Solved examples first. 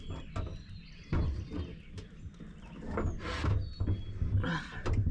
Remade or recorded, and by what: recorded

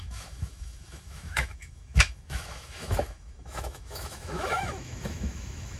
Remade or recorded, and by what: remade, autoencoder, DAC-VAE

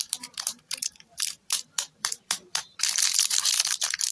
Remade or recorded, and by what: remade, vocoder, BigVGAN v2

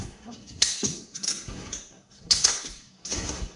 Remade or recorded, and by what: remade, codec, SNAC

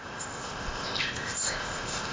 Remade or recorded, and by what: remade, codec, ZipCodec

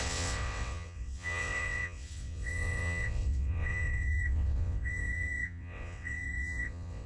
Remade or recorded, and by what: remade, vocoder, WaveNeXt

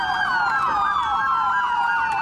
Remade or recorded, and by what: recorded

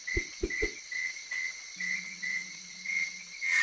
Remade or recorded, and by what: remade, vocoder, WaveNeXt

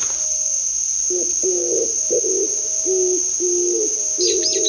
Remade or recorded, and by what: recorded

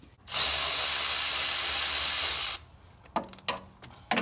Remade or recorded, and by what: recorded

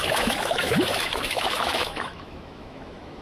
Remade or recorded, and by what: remade, autoencoder, DAC-VAE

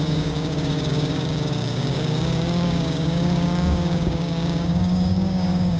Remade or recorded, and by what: remade, codec, DAC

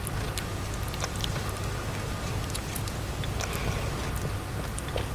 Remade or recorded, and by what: recorded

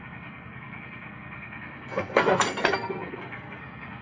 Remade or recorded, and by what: remade, codec, SNAC